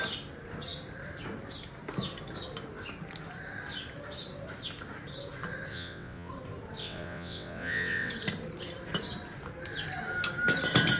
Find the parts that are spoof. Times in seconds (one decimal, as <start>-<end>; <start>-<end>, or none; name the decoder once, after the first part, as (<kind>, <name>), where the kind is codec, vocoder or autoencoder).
5.7-6.3 (vocoder, WaveNeXt); 6.8-8.1